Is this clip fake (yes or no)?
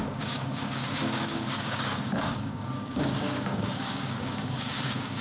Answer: yes